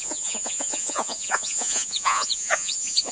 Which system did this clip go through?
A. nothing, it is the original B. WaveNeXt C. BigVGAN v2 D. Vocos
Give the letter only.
D